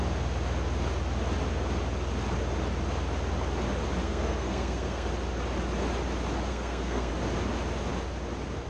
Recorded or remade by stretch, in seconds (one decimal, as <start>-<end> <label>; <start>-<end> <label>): 0.0-4.0 recorded; 4.0-5.1 remade; 5.1-6.5 recorded; 6.5-7.1 remade; 7.1-8.7 recorded